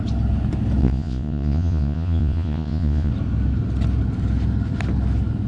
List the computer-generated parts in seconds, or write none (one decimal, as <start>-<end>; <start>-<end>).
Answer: 0.8-3.1